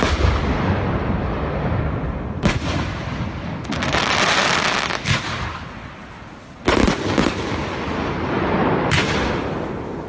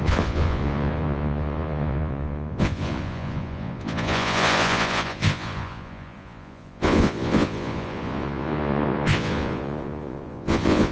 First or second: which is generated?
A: second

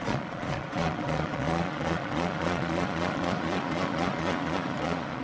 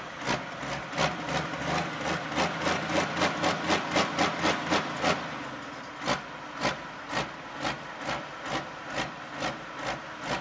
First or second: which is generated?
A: first